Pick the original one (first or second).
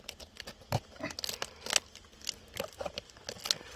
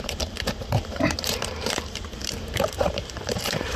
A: first